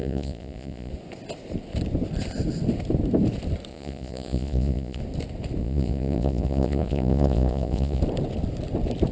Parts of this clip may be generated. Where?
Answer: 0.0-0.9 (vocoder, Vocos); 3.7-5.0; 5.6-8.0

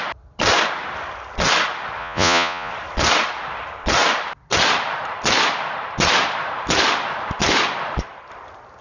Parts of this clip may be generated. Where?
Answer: 2.0-2.7 (vocoder, Vocos)

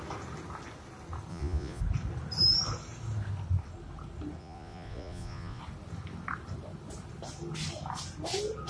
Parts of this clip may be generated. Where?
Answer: 1.3-1.8 (vocoder, Vocos); 4.4-5.6